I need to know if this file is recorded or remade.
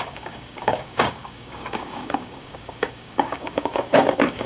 remade